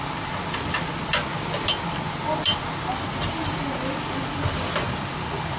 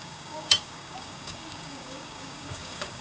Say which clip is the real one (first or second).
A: first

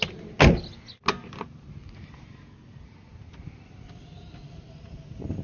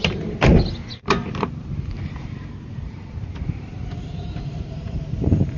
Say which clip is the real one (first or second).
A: first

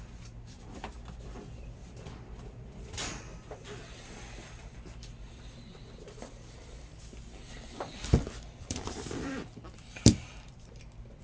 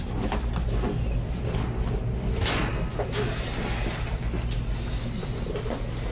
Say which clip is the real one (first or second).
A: second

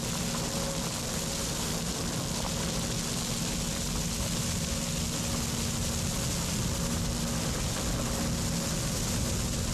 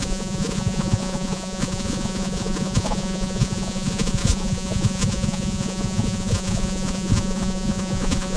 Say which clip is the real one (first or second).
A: first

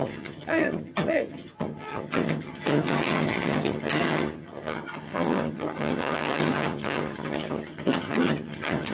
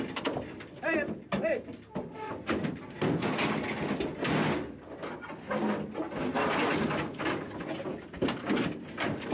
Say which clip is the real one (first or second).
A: second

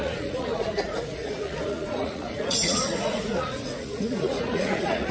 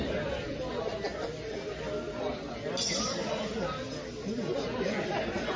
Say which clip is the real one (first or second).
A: second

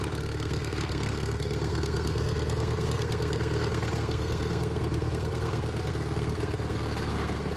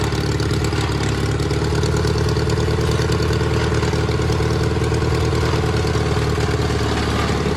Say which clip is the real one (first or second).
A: second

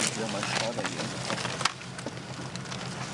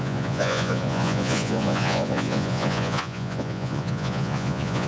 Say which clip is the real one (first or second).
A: first